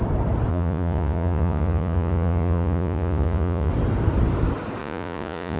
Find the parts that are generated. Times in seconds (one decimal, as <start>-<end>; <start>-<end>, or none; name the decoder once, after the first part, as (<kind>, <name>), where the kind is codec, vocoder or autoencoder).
0.5-3.7 (vocoder, Vocos); 4.8-5.6